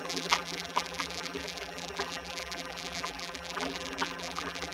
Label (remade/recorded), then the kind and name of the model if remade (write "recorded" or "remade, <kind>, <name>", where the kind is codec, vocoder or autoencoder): remade, vocoder, BigVGAN v2